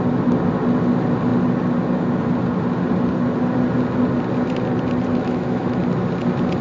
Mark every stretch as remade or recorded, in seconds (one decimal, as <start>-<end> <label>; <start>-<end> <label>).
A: 0.0-5.1 recorded; 5.1-5.8 remade; 5.8-6.6 recorded